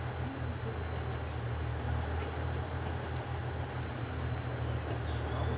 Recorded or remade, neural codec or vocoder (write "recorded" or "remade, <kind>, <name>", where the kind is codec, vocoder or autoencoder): recorded